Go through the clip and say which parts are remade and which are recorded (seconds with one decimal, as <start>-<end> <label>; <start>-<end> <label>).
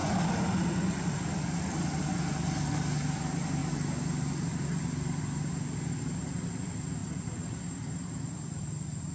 0.0-7.0 recorded; 7.0-8.7 remade; 8.7-9.1 recorded